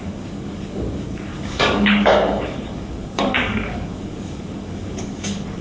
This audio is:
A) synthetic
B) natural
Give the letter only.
A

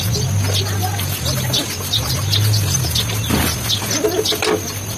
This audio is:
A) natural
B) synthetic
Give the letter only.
A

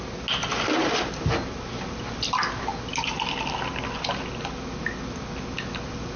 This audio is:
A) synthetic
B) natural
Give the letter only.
B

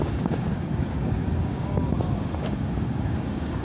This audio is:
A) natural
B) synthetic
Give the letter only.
B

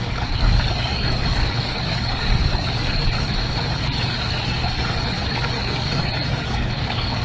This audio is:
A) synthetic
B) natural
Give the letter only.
A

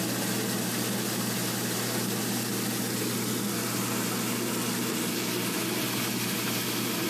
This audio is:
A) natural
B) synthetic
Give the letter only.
A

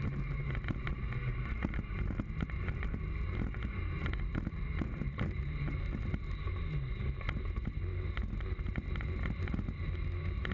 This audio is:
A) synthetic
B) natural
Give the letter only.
B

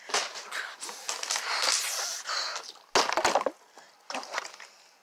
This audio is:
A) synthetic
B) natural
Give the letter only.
B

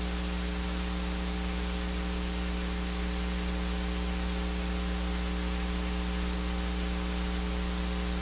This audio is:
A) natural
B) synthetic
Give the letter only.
A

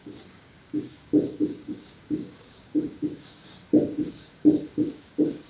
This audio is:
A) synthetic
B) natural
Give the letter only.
A